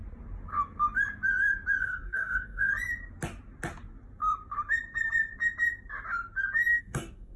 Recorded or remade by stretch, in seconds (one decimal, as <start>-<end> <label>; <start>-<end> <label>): 0.0-1.8 recorded; 1.8-2.7 remade; 2.7-6.8 recorded; 6.8-7.4 remade